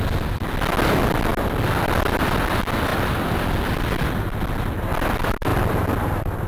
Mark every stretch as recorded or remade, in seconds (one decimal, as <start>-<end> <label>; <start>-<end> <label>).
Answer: 0.0-6.5 recorded